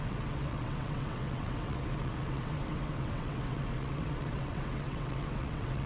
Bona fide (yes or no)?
no